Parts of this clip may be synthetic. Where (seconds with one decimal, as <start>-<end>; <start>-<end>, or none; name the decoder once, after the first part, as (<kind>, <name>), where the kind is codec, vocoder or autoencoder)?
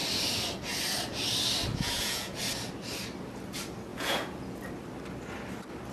1.7-2.4 (vocoder, Vocos); 3.9-4.6